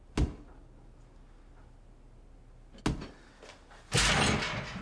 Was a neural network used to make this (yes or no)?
no